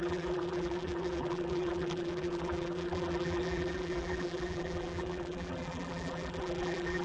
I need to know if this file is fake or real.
fake